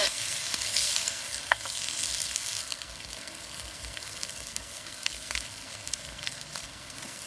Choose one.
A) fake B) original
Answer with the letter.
A